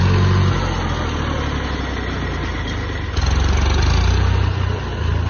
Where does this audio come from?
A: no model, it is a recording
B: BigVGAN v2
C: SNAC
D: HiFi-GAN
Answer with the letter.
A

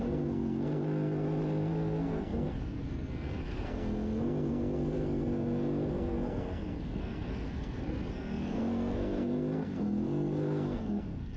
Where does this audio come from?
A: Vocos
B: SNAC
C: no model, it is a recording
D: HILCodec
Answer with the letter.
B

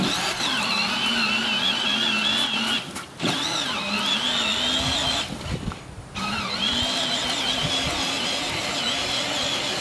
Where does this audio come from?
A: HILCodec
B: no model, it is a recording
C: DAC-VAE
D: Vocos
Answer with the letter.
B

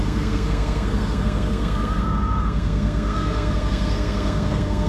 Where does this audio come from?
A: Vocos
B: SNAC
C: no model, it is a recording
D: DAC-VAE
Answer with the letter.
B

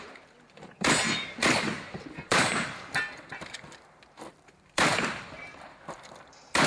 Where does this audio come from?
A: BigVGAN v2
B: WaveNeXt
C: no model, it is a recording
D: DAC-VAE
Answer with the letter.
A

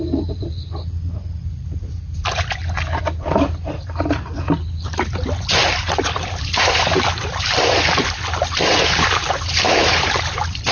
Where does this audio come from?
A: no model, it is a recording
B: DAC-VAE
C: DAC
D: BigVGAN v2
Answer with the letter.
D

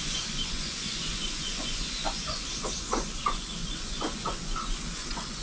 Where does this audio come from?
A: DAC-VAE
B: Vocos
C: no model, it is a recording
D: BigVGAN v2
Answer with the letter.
B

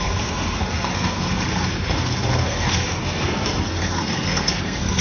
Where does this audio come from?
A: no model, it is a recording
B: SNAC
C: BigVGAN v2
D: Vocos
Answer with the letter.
B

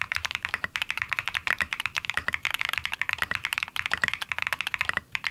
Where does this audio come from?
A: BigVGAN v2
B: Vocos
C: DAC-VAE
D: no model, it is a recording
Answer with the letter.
A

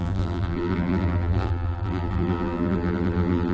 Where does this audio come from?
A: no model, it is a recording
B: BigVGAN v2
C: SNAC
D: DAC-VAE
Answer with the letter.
B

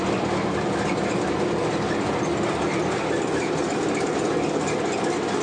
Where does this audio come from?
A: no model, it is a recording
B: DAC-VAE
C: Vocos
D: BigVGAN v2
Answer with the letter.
A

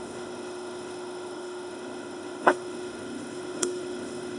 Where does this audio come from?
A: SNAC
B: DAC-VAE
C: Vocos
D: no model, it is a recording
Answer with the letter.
B